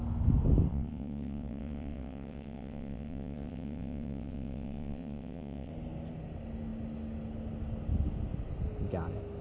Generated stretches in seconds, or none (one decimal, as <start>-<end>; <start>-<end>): 0.7-5.7